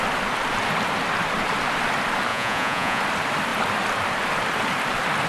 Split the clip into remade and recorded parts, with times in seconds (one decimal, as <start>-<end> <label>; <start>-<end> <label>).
0.0-2.3 recorded; 2.3-3.0 remade; 3.0-5.3 recorded